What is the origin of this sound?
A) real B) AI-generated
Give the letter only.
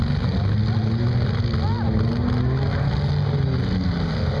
A